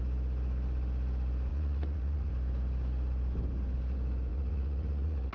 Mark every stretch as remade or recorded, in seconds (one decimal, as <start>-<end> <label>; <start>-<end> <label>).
0.0-1.5 recorded; 1.5-2.3 remade; 2.3-4.3 recorded; 4.3-5.3 remade